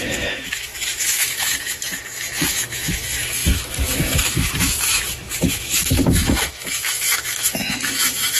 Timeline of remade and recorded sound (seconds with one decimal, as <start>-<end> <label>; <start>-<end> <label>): 0.0-8.4 remade